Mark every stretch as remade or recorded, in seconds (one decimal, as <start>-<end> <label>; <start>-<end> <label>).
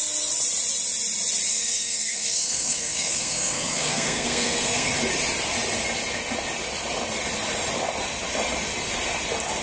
0.0-1.5 recorded; 1.5-4.9 remade; 4.9-9.6 recorded